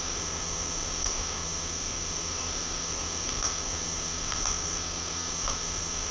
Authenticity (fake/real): fake